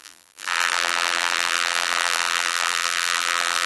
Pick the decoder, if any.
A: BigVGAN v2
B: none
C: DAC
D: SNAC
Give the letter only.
A